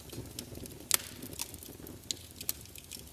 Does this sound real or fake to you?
real